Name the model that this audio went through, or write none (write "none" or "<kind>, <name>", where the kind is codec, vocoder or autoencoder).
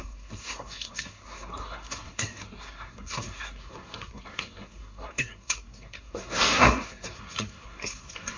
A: codec, SNAC